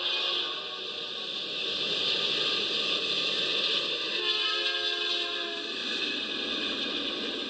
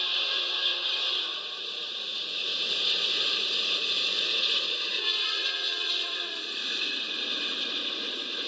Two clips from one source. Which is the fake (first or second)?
second